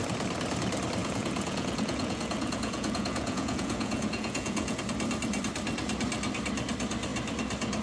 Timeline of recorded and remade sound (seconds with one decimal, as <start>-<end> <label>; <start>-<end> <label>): 0.0-1.0 recorded; 1.0-4.8 remade; 4.8-7.8 recorded